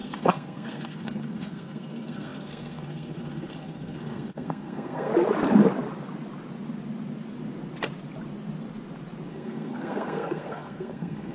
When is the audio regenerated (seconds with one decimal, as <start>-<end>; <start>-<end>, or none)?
0.0-5.1; 9.3-11.3

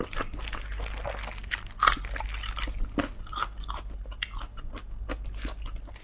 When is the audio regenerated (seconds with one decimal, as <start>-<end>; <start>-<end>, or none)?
none

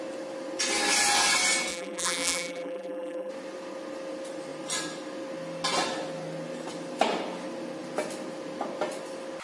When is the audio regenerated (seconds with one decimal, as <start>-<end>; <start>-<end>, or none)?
1.7-3.3

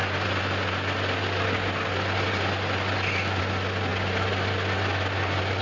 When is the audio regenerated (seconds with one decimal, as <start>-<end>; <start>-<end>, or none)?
none

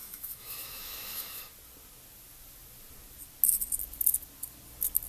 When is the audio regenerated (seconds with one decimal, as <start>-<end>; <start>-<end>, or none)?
0.0-1.4

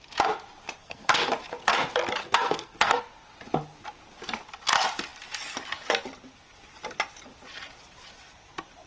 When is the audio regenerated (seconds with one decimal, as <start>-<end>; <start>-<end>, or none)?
0.8-1.3; 2.2-3.0

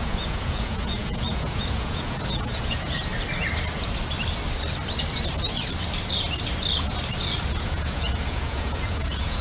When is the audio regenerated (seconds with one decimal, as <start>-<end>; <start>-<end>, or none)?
0.0-3.1; 7.5-9.4

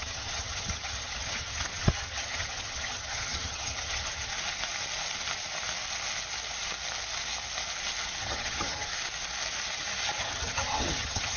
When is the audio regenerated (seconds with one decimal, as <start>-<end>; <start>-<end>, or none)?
0.0-4.3; 8.2-8.9; 10.2-11.4